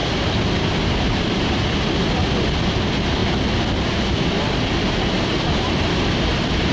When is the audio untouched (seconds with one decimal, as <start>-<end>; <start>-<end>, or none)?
1.2-3.2; 6.3-6.7